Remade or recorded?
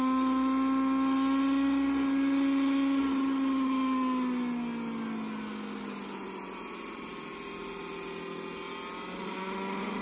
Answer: recorded